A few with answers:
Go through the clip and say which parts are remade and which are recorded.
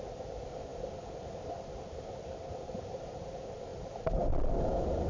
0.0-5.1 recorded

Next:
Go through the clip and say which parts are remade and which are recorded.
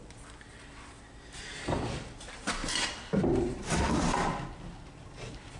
0.0-5.6 recorded